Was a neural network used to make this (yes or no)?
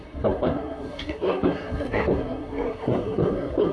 yes